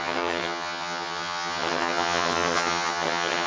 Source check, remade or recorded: remade